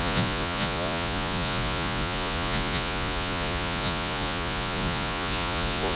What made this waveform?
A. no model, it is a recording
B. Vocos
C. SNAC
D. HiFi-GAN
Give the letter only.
B